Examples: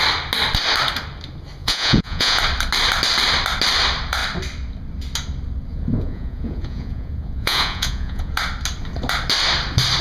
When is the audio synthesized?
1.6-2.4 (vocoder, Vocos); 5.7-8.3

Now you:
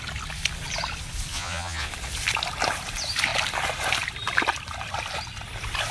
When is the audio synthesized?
1.3-1.9 (vocoder, Vocos)

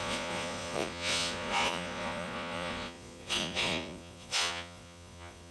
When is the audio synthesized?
0.0-5.5 (vocoder, Vocos)

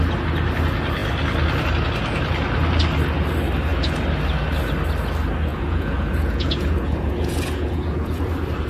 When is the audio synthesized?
5.5-8.2 (vocoder, Vocos)

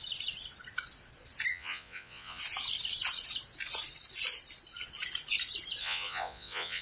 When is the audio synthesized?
1.5-2.4 (vocoder, Vocos); 5.8-6.8

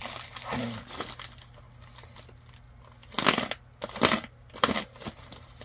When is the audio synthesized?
none

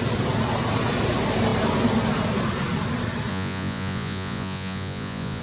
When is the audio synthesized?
3.3-5.4 (vocoder, Vocos)